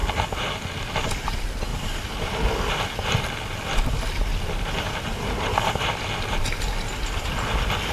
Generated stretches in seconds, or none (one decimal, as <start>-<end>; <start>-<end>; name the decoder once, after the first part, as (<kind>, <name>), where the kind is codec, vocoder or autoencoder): 1.7-2.4 (vocoder, BigVGAN v2); 4.3-6.1